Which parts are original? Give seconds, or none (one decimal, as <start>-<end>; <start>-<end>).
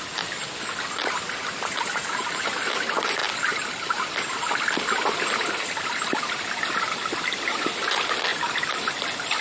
0.0-9.4